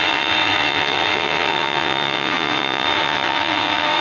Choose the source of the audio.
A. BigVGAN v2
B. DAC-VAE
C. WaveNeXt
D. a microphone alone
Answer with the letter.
C